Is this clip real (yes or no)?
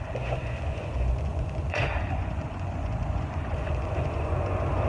no